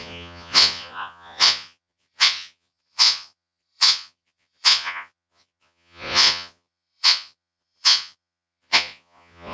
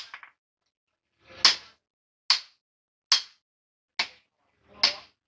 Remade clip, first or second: first